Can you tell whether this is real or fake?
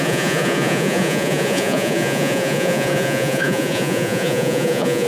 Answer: fake